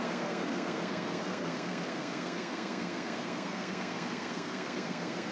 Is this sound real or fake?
fake